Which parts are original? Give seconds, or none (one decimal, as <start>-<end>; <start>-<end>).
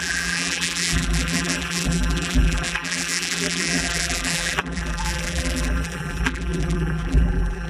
none